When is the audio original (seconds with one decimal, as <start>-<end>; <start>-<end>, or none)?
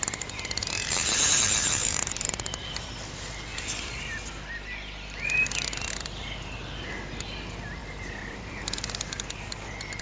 0.0-0.6; 2.9-7.8; 8.5-10.0